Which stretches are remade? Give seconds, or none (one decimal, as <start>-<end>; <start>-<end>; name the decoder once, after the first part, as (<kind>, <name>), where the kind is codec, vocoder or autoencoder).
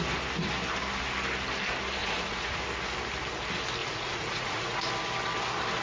2.0-2.6 (vocoder, Vocos); 3.8-4.9